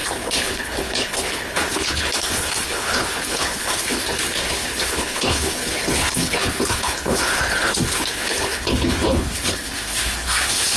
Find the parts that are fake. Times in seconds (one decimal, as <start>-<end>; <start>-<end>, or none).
0.0-10.8